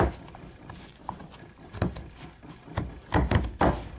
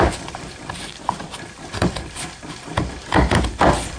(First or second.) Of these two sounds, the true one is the first